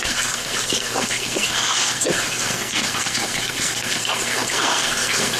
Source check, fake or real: fake